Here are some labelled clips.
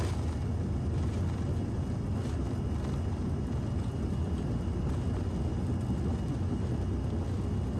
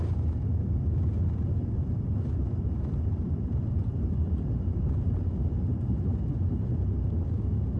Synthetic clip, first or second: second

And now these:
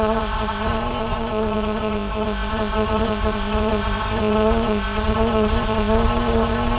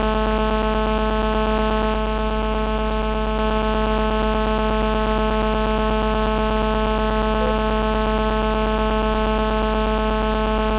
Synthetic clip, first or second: first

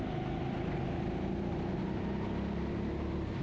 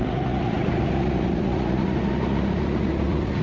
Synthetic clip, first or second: second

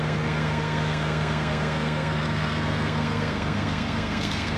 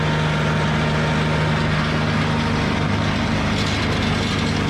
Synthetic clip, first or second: first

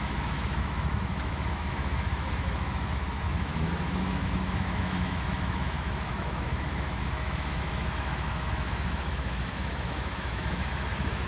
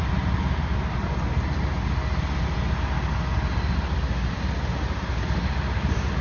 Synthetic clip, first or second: first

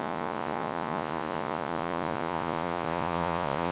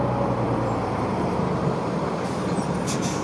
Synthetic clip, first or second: first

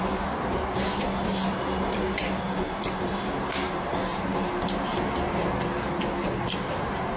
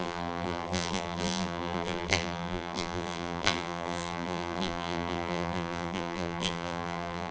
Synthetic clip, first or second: second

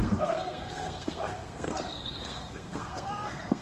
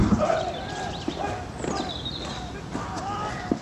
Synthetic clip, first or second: first